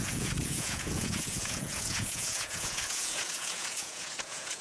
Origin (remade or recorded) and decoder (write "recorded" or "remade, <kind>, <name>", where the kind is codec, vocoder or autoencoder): remade, vocoder, Vocos